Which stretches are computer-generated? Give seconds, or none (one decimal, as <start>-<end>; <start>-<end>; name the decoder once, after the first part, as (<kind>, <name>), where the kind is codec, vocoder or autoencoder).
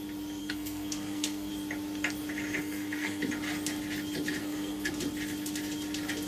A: 0.4-1.5 (codec, SNAC); 2.6-3.2; 4.4-4.9